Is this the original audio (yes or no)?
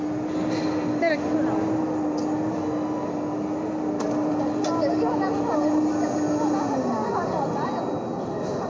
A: yes